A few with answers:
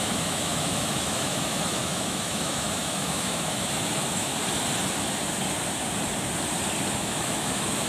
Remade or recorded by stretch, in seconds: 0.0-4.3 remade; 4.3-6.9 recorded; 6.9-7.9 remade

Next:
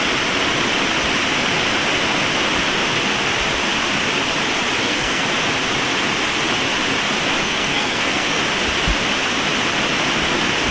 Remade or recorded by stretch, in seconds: 0.0-4.8 recorded; 4.8-5.3 remade; 5.3-7.4 recorded; 7.4-8.4 remade; 8.4-10.7 recorded

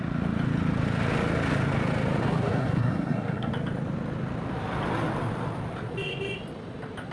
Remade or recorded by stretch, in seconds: 0.0-2.2 recorded; 2.2-3.5 remade; 3.5-7.1 recorded